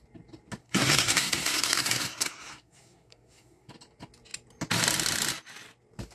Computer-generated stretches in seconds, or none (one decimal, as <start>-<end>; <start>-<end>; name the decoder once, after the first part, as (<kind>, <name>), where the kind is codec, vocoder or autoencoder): 0.6-3.7 (codec, SNAC)